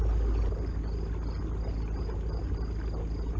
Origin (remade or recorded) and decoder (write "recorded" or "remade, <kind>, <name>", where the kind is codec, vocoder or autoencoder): recorded